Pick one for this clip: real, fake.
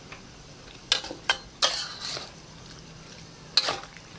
real